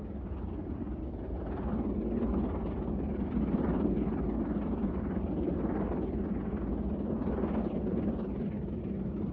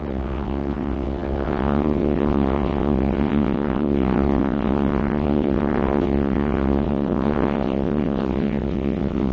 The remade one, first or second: second